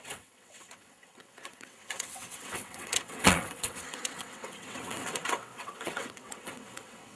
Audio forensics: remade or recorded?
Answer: remade